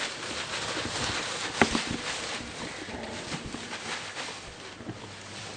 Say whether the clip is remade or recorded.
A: recorded